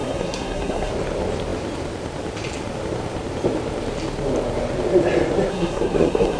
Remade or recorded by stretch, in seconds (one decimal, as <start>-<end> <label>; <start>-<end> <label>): 0.0-0.9 remade; 0.9-5.5 recorded; 5.5-6.4 remade